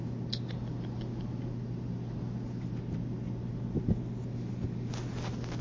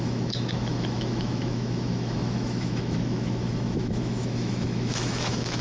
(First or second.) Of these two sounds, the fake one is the second